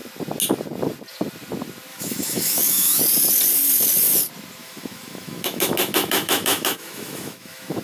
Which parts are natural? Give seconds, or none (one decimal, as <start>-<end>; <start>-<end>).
0.0-1.9; 3.0-4.6